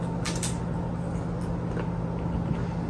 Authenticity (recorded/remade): recorded